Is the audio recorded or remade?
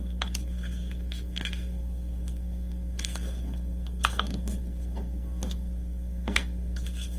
remade